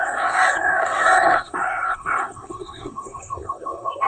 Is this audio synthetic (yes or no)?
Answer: yes